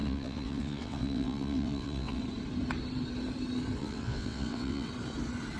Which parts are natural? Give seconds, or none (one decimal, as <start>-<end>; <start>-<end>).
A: 2.2-3.8; 4.9-5.6